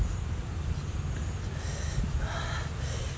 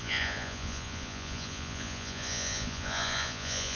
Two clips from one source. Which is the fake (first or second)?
second